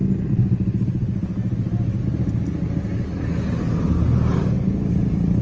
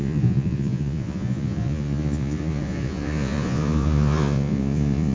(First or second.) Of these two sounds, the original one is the first